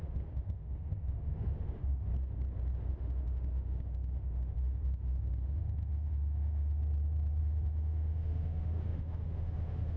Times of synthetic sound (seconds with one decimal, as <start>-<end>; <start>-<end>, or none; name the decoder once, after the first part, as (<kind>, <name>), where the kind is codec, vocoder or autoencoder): 0.0-2.1 (autoencoder, DAC-VAE); 2.9-6.8; 7.4-10.0